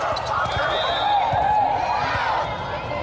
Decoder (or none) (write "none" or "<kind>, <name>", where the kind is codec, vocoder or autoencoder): none